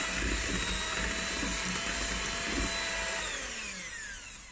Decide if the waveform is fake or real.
real